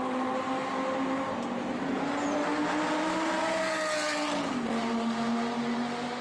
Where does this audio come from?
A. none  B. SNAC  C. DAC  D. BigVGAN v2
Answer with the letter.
A